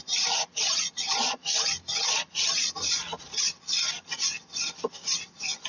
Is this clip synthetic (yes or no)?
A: no